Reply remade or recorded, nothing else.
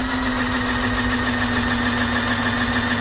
recorded